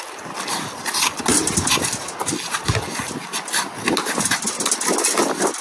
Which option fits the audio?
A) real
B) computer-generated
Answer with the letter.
A